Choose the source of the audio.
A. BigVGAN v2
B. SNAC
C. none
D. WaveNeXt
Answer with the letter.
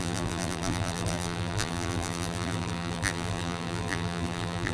A